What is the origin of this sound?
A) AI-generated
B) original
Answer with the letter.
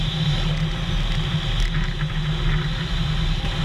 B